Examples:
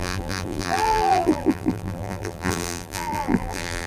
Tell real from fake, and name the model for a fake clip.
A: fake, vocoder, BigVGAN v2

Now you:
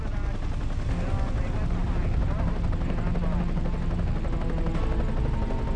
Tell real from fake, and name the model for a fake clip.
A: real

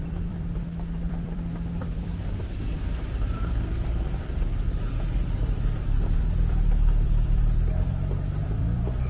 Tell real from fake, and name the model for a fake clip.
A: fake, vocoder, BigVGAN v2